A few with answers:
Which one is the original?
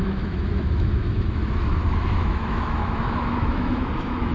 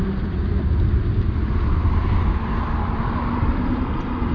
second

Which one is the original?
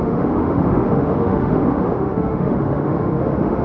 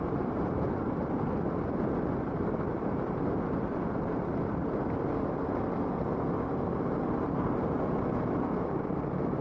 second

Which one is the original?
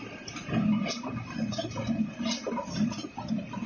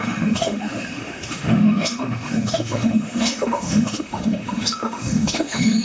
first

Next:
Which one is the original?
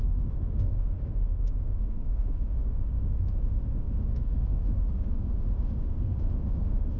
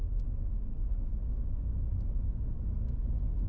second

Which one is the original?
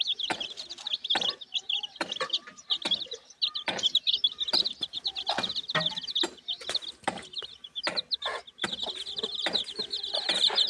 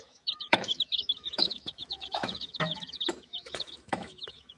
first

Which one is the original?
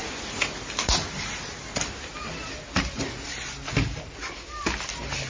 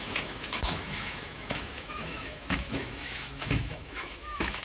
first